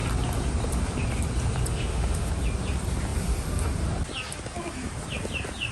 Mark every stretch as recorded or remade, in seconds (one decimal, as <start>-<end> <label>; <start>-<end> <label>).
0.0-1.7 recorded; 1.7-2.3 remade; 2.3-5.7 recorded